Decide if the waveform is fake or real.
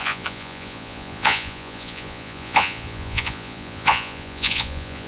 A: fake